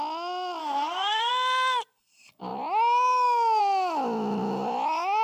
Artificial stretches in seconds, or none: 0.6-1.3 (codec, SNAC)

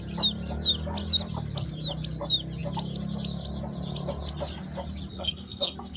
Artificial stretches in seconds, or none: 5.1-6.0 (codec, SNAC)

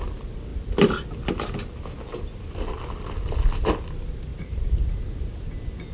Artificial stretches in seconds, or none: 4.3-5.1 (vocoder, BigVGAN v2)